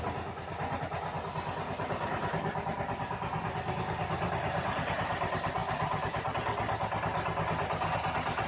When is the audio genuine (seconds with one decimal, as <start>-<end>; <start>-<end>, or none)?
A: 0.0-5.6; 6.3-8.5